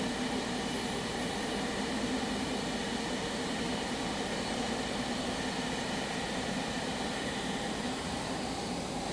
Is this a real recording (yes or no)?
no